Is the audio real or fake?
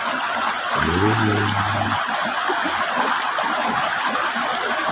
real